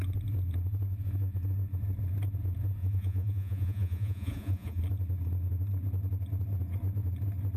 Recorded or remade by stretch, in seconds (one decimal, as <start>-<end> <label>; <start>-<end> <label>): 0.0-2.8 recorded; 2.8-4.8 remade; 4.8-7.6 recorded